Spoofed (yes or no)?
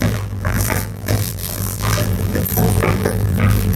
yes